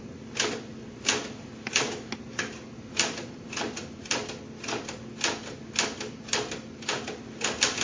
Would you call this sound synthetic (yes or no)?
no